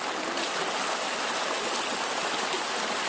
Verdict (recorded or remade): recorded